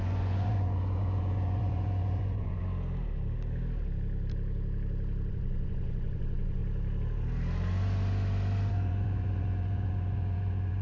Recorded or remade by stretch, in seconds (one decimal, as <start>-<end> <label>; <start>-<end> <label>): 0.0-2.6 remade; 2.6-5.3 recorded; 5.3-6.6 remade; 6.6-8.7 recorded; 8.7-10.8 remade